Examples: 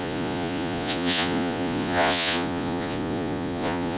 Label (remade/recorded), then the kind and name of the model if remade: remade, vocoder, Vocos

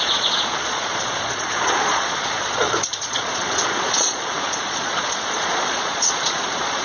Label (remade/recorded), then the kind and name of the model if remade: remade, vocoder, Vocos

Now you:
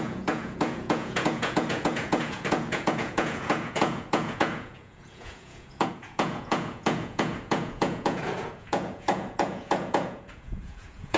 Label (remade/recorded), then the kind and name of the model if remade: remade, vocoder, Vocos